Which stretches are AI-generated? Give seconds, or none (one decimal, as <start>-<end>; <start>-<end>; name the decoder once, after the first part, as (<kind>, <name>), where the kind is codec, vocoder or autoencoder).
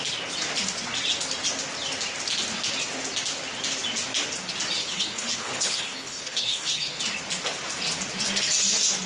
4.8-7.0 (codec, HILCodec)